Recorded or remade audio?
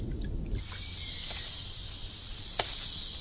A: remade